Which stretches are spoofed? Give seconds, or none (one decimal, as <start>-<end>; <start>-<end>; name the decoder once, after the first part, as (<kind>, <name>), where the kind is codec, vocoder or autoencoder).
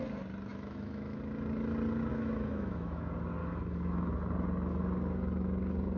0.5-1.2 (autoencoder, DAC-VAE); 2.1-3.0; 3.4-4.1